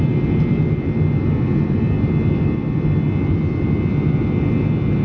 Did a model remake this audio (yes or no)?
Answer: no